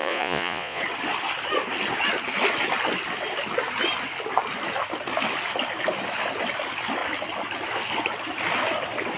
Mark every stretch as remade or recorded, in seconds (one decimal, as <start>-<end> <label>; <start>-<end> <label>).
0.0-0.8 remade; 0.8-9.2 recorded

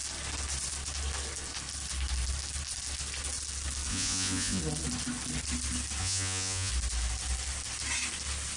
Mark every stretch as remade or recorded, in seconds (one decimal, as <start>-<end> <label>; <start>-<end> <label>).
0.0-3.9 recorded; 3.9-4.6 remade; 4.6-6.0 recorded; 6.0-6.7 remade; 6.7-8.6 recorded

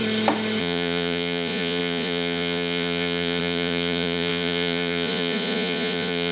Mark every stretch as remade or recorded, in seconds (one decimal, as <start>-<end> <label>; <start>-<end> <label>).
0.0-0.6 recorded; 0.6-6.3 remade

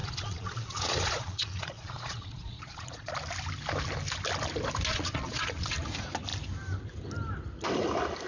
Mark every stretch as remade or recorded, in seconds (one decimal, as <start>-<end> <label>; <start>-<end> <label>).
0.0-3.1 remade; 3.1-4.9 recorded; 4.9-5.7 remade; 5.7-8.3 recorded

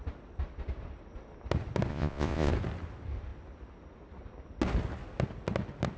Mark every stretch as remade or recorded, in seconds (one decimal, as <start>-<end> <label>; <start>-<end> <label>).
0.0-1.9 recorded; 1.9-2.5 remade; 2.5-6.0 recorded

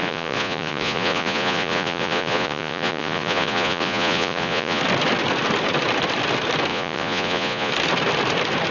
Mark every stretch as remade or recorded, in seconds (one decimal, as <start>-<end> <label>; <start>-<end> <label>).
0.0-4.8 remade; 4.8-6.7 recorded; 6.7-7.7 remade; 7.7-8.7 recorded

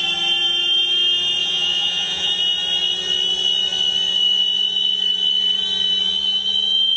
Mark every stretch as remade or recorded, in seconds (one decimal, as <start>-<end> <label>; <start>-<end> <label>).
0.0-1.4 recorded; 1.4-2.3 remade; 2.3-7.0 recorded